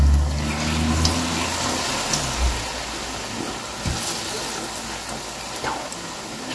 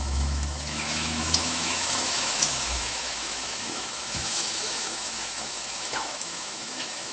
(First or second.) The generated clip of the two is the second